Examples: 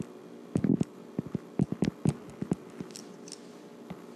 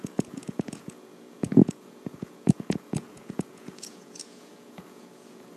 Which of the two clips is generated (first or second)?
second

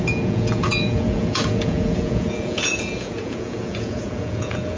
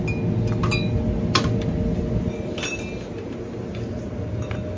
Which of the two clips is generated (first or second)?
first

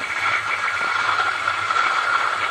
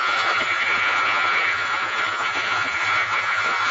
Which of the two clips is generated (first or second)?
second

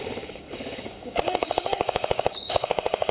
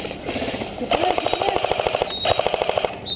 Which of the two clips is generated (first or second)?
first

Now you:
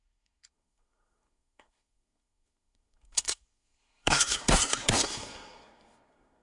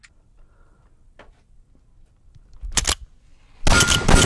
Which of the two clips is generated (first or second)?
first